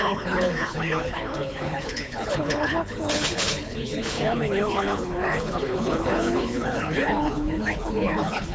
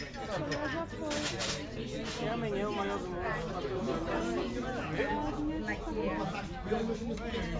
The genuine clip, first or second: second